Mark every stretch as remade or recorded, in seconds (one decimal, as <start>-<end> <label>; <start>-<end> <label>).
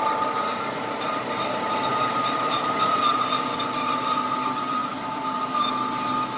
0.0-0.5 recorded; 0.5-3.2 remade; 3.2-4.8 recorded; 4.8-5.7 remade; 5.7-6.4 recorded